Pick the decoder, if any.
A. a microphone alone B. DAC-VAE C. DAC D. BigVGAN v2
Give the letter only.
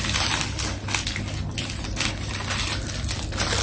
A